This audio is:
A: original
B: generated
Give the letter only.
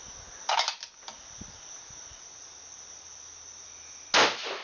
A